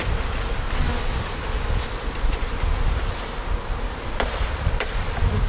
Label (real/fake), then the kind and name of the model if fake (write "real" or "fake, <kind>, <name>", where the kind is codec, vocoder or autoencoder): real